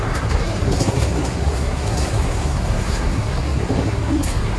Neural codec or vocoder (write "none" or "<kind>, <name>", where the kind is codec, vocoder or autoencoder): codec, SNAC